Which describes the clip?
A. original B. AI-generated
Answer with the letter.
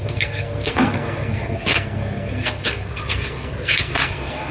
B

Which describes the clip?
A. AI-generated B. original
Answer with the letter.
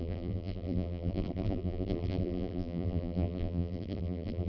A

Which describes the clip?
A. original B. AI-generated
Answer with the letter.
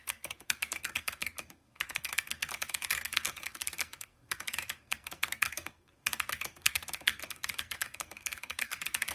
B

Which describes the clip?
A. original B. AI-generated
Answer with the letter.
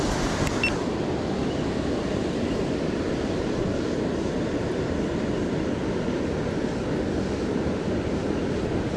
A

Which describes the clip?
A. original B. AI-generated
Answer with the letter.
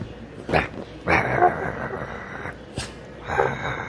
A